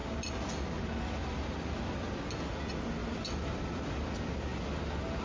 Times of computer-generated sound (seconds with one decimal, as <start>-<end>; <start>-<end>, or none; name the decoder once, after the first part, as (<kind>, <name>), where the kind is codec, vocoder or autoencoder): 0.0-0.5 (vocoder, BigVGAN v2); 1.2-1.8; 3.0-4.1